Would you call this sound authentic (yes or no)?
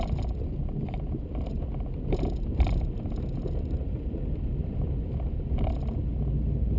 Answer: yes